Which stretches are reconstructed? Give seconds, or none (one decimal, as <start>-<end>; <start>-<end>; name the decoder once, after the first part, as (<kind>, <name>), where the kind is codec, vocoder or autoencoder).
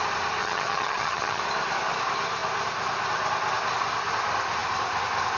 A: 0.4-1.4 (vocoder, HiFi-GAN)